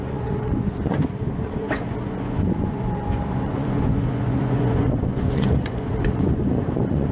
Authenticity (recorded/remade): remade